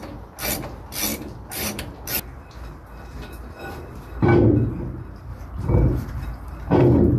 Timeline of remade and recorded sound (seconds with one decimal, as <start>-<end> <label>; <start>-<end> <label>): 0.0-1.1 recorded; 1.1-1.8 remade; 1.8-5.3 recorded; 5.3-6.8 remade; 6.8-7.2 recorded